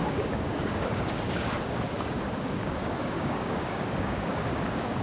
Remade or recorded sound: remade